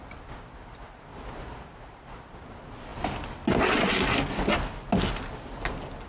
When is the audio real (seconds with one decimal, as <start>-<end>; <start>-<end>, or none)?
0.0-6.1